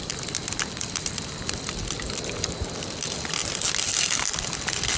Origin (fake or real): real